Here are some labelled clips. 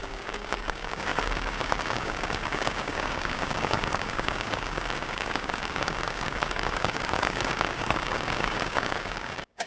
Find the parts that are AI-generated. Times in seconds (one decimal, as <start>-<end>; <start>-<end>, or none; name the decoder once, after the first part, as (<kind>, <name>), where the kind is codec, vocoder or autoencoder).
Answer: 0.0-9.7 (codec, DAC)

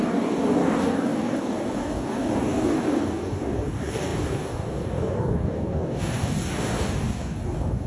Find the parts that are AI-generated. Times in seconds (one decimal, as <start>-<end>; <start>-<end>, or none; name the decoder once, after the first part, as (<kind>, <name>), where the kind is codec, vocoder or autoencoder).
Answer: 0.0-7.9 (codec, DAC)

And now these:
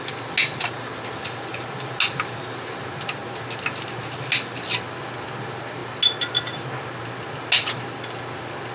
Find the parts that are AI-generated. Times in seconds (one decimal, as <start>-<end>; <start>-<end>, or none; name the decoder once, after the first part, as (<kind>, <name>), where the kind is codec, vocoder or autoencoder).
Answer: none

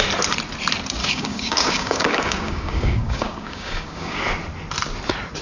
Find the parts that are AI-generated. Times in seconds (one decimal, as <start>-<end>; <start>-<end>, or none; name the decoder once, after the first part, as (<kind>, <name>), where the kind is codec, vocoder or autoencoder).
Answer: 1.0-4.2 (codec, DAC)